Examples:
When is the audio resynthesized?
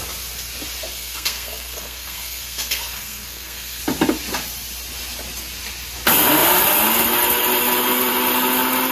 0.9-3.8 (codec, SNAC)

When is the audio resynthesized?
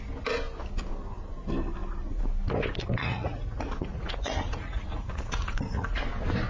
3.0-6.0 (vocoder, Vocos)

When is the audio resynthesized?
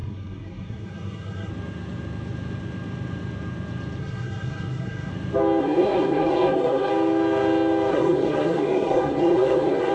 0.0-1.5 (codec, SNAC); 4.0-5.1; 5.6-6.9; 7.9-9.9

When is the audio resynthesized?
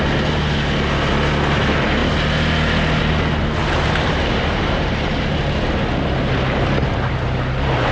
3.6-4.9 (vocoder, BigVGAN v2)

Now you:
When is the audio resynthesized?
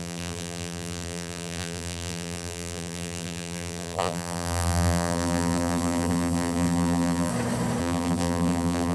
0.0-7.3 (vocoder, BigVGAN v2); 7.8-8.9